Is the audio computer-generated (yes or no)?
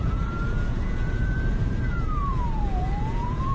yes